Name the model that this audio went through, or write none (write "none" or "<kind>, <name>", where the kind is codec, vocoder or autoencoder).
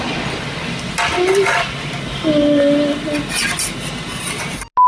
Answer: none